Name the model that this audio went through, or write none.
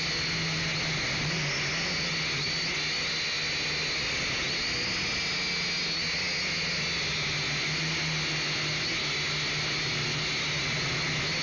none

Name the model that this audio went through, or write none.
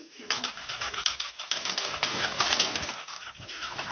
codec, DAC